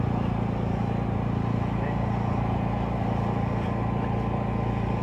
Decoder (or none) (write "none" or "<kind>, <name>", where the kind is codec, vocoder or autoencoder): none